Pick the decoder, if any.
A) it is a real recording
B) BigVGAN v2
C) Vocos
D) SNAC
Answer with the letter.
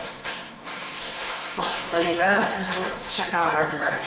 D